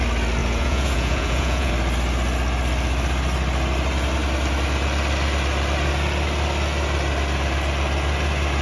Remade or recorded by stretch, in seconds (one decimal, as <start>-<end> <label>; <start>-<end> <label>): 0.0-0.4 recorded; 0.4-1.7 remade; 1.7-8.6 recorded